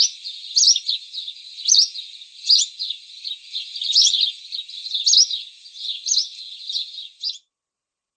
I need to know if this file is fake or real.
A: real